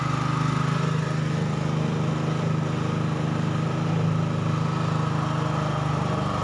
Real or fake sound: real